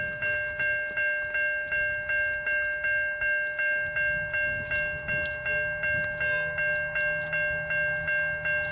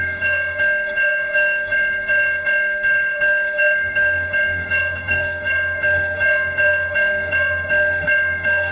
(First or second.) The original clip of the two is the first